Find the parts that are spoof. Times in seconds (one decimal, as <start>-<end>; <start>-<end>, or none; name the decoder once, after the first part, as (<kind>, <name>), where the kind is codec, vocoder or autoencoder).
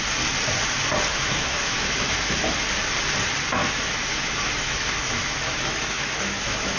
1.1-2.5 (autoencoder, DAC-VAE); 3.6-6.8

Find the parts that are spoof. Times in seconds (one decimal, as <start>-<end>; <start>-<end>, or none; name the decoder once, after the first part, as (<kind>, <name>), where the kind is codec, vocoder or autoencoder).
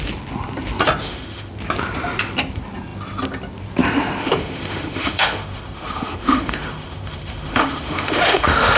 1.0-1.5 (autoencoder, DAC-VAE); 4.2-8.8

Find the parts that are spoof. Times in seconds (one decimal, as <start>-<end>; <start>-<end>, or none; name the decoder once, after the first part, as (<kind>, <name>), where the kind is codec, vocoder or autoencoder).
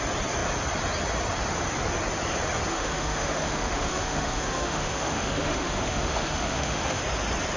2.7-7.0 (autoencoder, DAC-VAE)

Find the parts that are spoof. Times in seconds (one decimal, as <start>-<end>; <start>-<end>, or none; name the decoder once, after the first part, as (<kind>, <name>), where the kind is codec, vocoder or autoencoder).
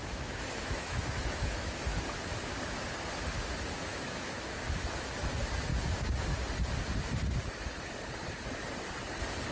0.0-2.0 (autoencoder, DAC-VAE); 3.9-4.6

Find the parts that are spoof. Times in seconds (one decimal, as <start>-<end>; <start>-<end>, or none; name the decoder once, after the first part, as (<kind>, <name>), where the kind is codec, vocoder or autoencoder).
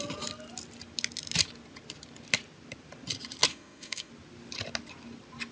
3.5-4.1 (autoencoder, DAC-VAE)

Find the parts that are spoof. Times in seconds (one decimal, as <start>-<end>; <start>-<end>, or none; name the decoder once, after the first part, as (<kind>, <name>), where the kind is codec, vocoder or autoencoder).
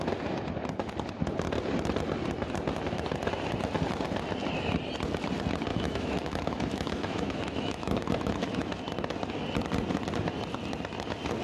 5.7-8.8 (autoencoder, DAC-VAE)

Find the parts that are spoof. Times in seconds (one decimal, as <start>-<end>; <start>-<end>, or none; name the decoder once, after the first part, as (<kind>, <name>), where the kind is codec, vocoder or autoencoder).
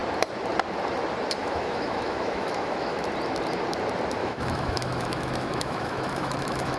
1.4-3.0 (autoencoder, DAC-VAE); 4.2-6.8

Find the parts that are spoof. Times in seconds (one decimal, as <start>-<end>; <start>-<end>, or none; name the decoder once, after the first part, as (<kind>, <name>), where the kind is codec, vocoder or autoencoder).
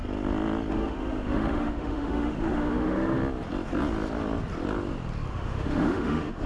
0.7-3.2 (autoencoder, DAC-VAE); 5.3-6.5